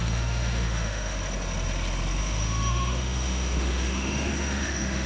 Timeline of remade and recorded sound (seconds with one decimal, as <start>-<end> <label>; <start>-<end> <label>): 0.0-1.2 remade; 1.2-2.2 recorded; 2.2-5.1 remade